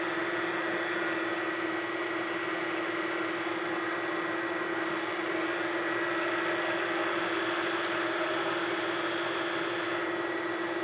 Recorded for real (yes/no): yes